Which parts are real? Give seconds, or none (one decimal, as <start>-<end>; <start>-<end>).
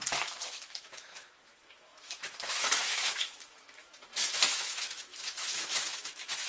none